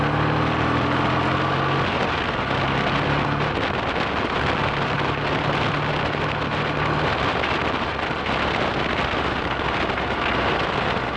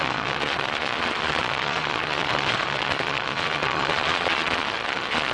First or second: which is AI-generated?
second